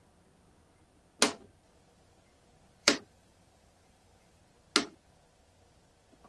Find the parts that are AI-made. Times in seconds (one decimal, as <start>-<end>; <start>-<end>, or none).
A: 2.8-4.4